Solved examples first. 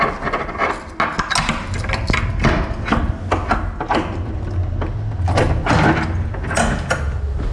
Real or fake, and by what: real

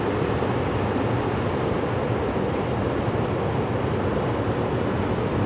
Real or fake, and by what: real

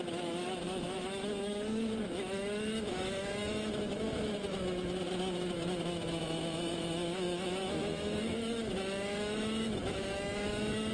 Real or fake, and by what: fake, autoencoder, DAC-VAE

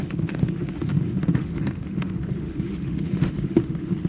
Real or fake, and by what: fake, autoencoder, DAC-VAE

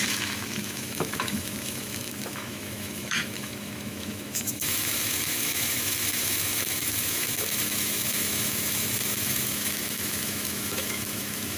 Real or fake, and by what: fake, autoencoder, DAC-VAE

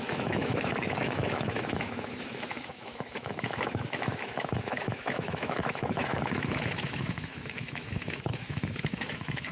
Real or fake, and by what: fake, autoencoder, DAC-VAE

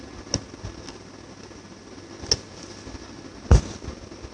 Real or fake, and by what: real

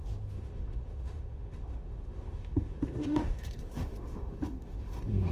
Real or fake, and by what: fake, autoencoder, DAC-VAE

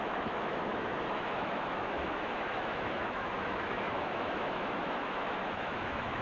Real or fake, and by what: fake, autoencoder, DAC-VAE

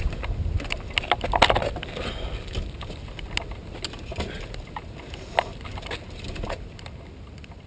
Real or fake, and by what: real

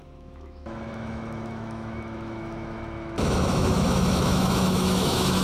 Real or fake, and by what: fake, autoencoder, DAC-VAE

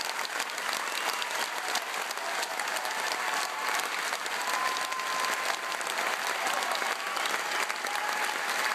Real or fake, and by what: real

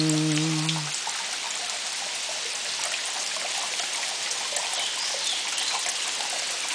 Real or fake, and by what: real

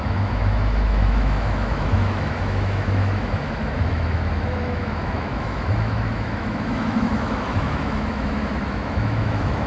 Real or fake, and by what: fake, autoencoder, DAC-VAE